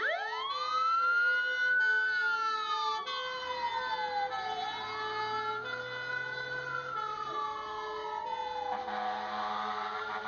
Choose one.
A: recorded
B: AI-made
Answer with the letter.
A